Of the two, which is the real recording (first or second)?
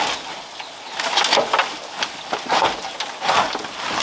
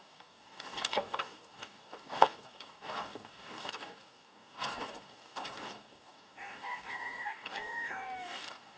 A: first